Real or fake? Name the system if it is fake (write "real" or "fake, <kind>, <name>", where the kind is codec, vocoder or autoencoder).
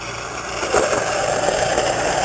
real